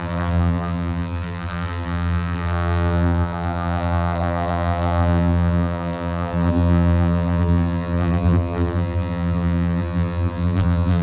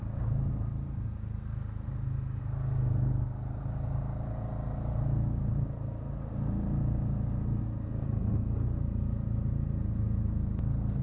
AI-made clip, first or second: first